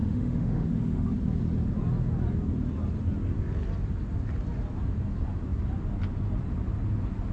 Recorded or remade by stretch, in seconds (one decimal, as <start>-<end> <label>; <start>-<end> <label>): 0.0-1.1 remade; 1.1-7.3 recorded